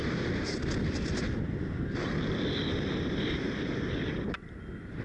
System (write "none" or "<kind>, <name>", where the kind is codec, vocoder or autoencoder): none